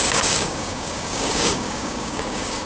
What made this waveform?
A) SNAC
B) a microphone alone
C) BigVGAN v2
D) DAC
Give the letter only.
D